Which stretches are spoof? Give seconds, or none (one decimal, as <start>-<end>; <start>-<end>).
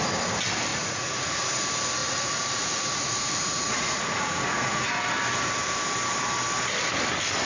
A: 0.7-1.6; 2.0-4.9